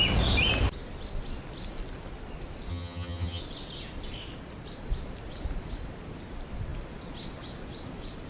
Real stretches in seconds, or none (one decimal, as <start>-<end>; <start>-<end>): 0.0-2.7; 3.4-8.3